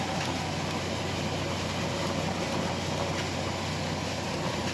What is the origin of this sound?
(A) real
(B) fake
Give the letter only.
A